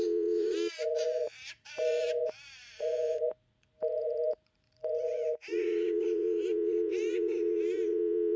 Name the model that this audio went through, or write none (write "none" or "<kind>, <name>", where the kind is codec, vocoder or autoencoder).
vocoder, Vocos